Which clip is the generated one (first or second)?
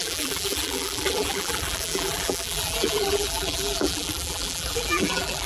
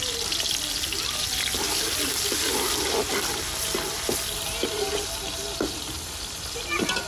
first